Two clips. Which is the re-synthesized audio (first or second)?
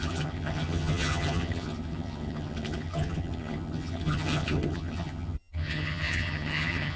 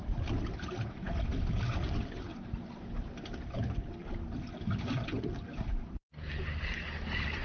first